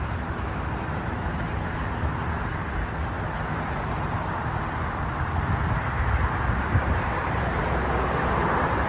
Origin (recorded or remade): recorded